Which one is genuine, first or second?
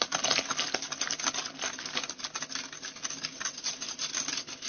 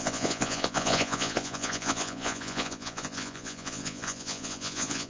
first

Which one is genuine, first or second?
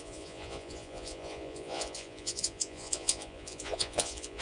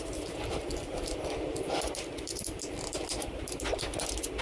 second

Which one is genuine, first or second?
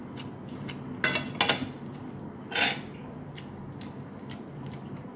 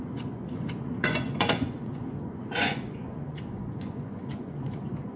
first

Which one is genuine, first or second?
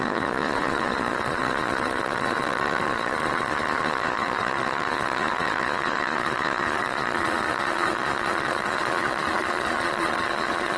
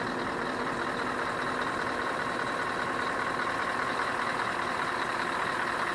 second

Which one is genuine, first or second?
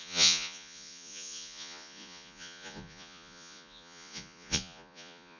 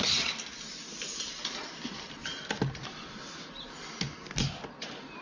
second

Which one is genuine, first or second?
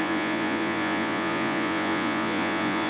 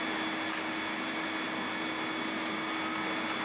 second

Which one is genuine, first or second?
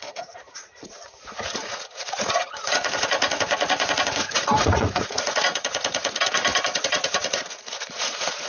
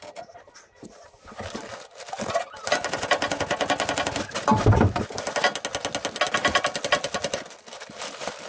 second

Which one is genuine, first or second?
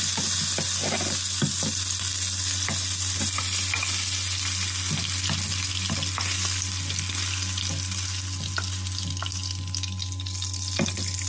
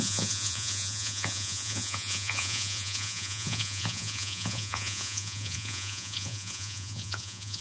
first